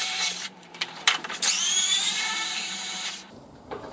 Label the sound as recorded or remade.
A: remade